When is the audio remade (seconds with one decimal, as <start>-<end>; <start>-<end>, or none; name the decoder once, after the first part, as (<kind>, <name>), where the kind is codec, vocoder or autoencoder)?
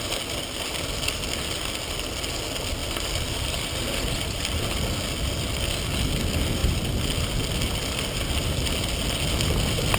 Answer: 6.6-7.4 (vocoder, BigVGAN v2)